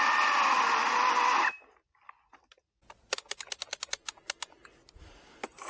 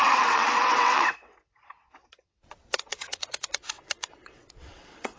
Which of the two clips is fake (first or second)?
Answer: second